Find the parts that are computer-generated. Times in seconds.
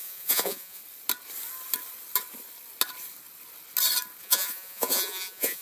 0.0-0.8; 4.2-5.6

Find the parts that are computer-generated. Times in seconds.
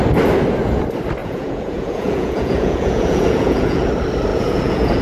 1.2-3.9; 4.3-5.0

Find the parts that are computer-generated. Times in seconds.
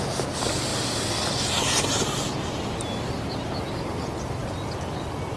none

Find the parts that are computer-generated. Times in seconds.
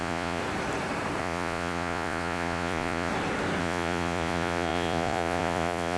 0.0-0.4; 1.2-3.1; 3.6-6.0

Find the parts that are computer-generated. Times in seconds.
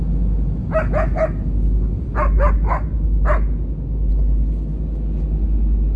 none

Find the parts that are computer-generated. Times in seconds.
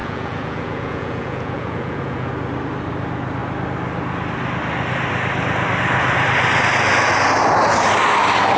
0.0-2.3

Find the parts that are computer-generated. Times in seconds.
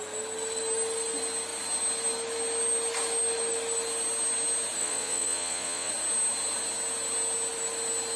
4.8-5.9